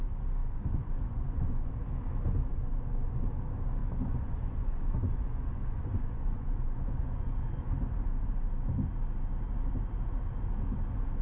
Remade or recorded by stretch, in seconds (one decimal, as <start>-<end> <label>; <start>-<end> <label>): 0.0-0.4 recorded; 0.4-1.7 remade; 1.7-2.5 recorded; 2.5-3.2 remade; 3.2-3.8 recorded; 3.8-7.7 remade; 7.7-11.2 recorded